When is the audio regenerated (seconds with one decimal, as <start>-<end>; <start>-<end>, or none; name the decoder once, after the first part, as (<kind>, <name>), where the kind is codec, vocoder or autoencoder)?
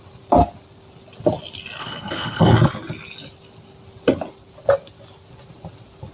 1.8-2.4 (codec, HILCodec)